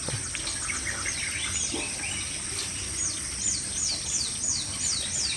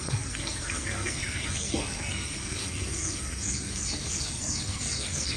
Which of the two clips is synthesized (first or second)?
second